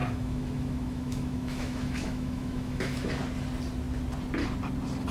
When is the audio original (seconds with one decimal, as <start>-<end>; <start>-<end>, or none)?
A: 3.1-5.1

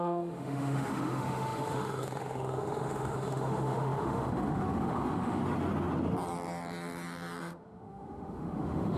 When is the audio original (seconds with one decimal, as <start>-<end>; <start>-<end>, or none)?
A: 5.4-7.4

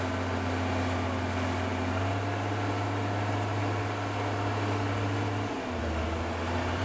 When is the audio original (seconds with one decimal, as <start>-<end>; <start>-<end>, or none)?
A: 0.0-6.8